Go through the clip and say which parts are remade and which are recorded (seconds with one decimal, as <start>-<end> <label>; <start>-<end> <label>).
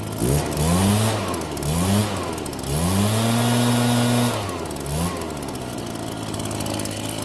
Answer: 0.0-7.2 recorded